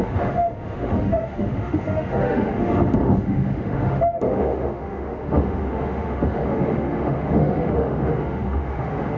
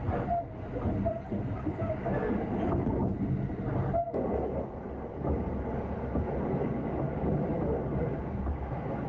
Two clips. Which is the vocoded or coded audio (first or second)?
first